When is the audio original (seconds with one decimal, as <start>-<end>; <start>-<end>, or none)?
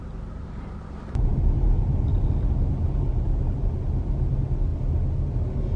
0.0-5.8